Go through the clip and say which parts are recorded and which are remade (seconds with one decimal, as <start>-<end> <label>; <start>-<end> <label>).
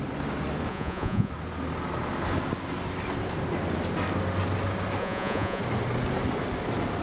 0.0-0.7 recorded; 0.7-1.3 remade; 1.3-5.0 recorded; 5.0-5.6 remade; 5.6-7.0 recorded